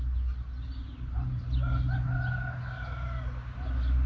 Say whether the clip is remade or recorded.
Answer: recorded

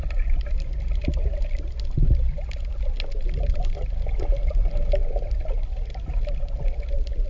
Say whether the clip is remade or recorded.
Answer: recorded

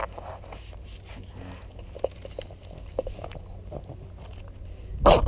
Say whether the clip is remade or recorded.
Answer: recorded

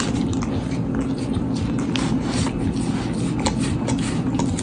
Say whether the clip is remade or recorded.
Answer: recorded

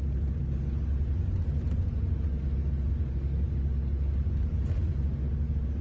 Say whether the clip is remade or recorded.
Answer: recorded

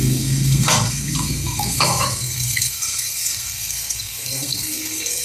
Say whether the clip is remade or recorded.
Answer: remade